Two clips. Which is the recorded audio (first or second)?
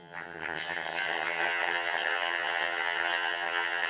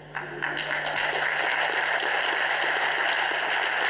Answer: second